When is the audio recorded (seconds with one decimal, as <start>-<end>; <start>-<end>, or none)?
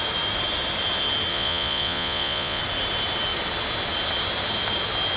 0.0-1.3; 2.6-5.2